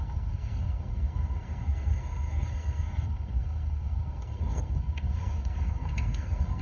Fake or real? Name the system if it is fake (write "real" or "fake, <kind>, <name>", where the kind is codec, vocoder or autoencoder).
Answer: fake, codec, SNAC